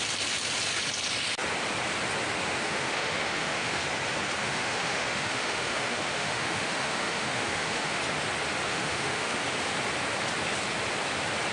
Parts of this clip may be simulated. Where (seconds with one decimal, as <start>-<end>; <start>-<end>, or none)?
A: 2.6-3.8; 4.4-8.0; 8.7-9.4